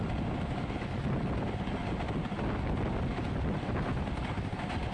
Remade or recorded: recorded